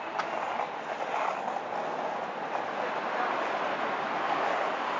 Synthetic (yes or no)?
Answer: no